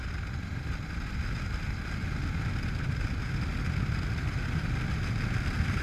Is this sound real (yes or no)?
yes